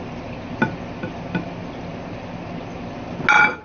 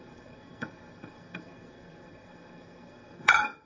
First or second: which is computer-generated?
second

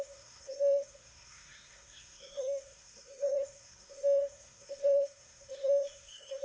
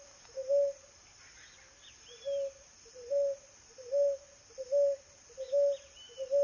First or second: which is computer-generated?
first